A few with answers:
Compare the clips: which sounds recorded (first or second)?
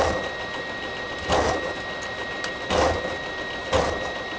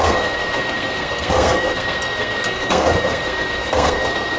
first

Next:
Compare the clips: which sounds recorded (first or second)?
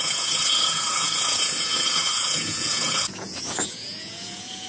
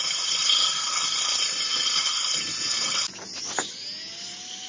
second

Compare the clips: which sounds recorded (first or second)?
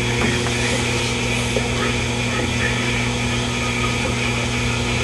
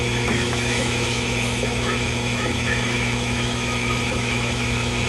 first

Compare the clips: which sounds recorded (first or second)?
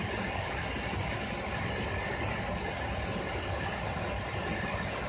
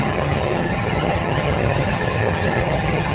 first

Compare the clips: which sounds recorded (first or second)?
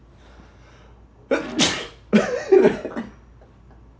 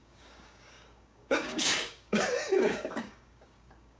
first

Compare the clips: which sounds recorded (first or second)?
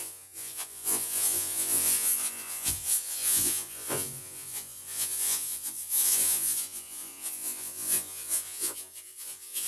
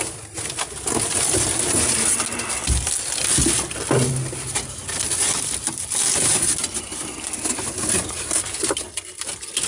second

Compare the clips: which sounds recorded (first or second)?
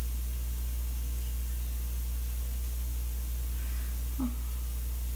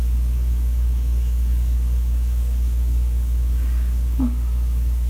first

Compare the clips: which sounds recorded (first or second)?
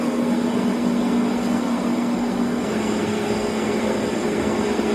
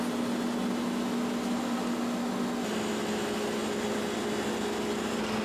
second